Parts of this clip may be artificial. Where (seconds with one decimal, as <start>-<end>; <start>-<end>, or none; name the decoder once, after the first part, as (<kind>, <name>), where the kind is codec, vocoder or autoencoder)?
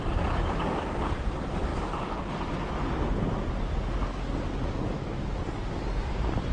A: none